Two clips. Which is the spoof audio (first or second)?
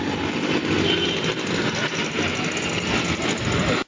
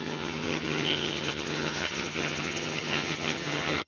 second